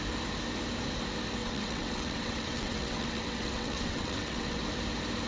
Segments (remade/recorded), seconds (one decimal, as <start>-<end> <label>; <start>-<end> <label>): 0.0-1.4 recorded; 1.4-4.6 remade; 4.6-5.3 recorded

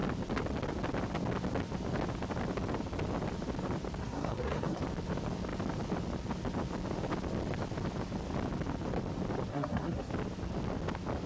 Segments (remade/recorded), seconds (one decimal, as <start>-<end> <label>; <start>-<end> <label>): 0.0-4.0 recorded; 4.0-4.8 remade; 4.8-9.5 recorded; 9.5-10.1 remade; 10.1-11.3 recorded